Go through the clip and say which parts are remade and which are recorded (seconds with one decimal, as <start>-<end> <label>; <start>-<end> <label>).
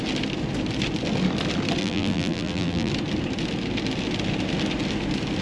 0.0-1.8 recorded; 1.8-2.9 remade; 2.9-5.4 recorded